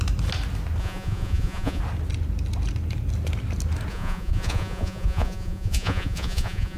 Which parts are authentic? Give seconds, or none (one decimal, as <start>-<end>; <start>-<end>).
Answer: 0.0-0.8; 1.8-3.9